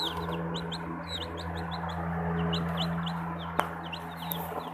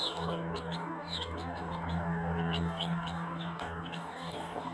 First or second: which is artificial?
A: second